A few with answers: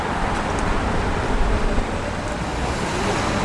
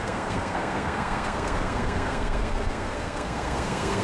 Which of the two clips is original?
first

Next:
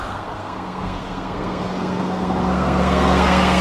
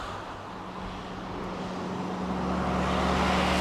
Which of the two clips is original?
second